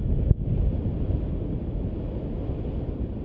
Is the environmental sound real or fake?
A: real